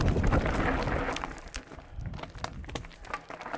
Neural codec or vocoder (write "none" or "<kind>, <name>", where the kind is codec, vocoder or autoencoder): none